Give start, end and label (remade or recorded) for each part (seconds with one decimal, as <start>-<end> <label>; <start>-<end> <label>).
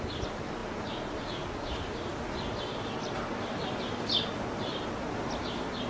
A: 0.0-2.1 recorded; 2.1-4.3 remade; 4.3-5.9 recorded